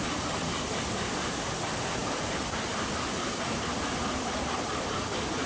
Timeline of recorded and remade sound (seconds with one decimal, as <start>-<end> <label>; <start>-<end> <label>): 0.0-5.5 recorded